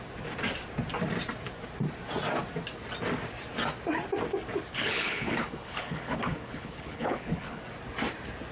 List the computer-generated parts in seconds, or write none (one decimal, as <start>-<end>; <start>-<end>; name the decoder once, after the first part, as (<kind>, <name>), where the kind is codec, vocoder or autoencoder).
4.7-7.6 (codec, HILCodec)